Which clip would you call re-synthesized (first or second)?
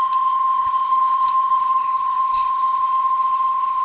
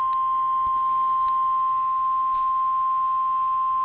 first